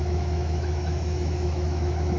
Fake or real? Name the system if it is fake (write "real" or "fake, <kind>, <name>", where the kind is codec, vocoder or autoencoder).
fake, autoencoder, DAC-VAE